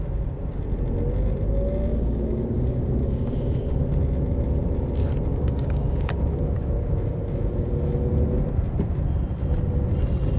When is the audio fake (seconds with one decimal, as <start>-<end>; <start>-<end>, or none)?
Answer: 1.9-3.7; 5.3-6.1